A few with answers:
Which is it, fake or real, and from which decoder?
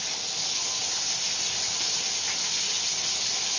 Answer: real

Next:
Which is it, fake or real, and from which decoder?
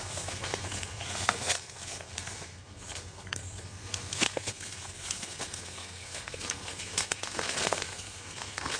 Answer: fake, codec, SNAC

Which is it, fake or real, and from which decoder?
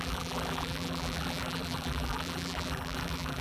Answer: fake, vocoder, BigVGAN v2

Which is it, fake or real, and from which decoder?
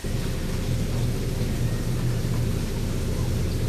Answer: real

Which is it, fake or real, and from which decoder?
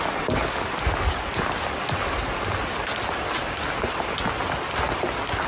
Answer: real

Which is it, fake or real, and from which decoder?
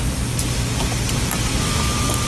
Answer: real